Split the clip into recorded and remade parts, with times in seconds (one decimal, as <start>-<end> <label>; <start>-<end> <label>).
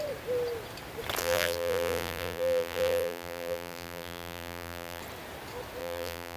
0.0-1.2 recorded; 1.2-5.0 remade; 5.0-5.8 recorded; 5.8-6.4 remade